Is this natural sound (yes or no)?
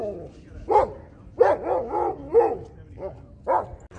yes